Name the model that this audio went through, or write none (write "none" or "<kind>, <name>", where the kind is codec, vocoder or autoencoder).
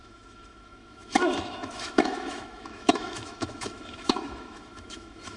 autoencoder, DAC-VAE